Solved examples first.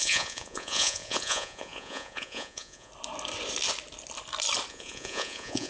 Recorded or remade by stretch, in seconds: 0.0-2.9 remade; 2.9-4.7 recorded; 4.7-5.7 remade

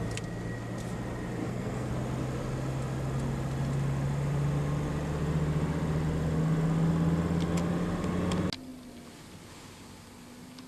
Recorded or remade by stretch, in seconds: 0.0-1.4 recorded; 1.4-1.9 remade; 1.9-10.7 recorded

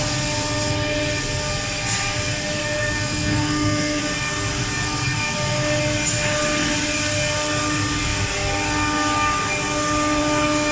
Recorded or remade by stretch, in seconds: 0.0-2.6 recorded; 2.6-4.0 remade; 4.0-10.7 recorded

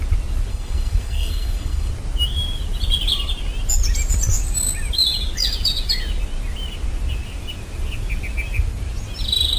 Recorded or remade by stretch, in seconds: 0.0-0.5 recorded; 0.5-1.9 remade; 1.9-9.6 recorded

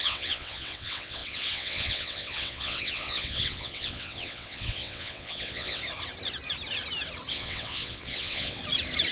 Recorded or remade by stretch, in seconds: 0.0-5.8 remade; 5.8-7.3 recorded; 7.3-8.6 remade; 8.6-9.1 recorded

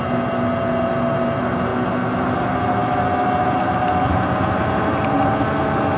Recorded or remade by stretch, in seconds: 0.0-6.0 recorded

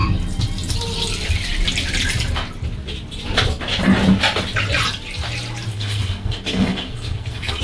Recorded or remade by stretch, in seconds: 0.0-5.7 recorded; 5.7-7.6 remade